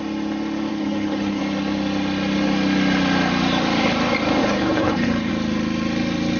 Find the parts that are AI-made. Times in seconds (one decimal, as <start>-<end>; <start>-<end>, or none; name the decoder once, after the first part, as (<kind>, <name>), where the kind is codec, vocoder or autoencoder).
0.7-1.4 (codec, HILCodec); 4.4-5.3